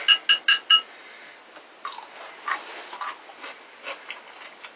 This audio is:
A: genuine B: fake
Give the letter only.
A